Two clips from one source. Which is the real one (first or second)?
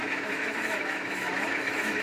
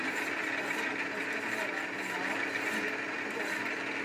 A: second